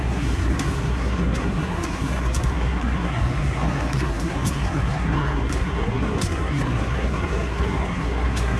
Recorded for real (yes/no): no